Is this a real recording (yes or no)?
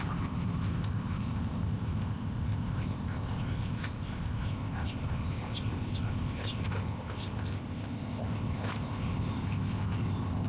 no